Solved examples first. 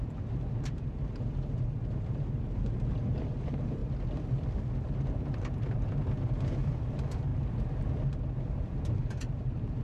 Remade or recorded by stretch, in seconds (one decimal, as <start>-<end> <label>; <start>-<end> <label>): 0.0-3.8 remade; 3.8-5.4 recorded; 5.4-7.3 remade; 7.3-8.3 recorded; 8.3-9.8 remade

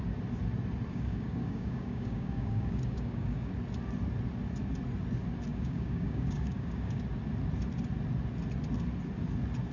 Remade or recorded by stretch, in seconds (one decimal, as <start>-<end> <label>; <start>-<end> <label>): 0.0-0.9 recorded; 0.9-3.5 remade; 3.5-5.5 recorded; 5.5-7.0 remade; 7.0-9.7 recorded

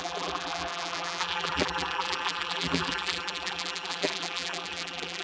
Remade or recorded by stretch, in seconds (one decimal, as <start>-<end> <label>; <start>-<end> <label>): 0.0-5.2 remade

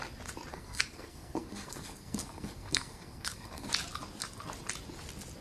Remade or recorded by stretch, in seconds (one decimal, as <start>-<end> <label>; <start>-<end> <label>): 0.0-0.5 recorded; 0.5-3.7 remade; 3.7-5.4 recorded

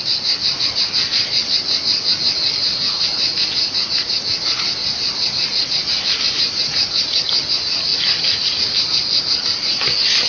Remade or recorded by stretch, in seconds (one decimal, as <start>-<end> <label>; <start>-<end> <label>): 0.0-10.3 recorded